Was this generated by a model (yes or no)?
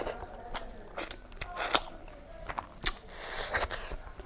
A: no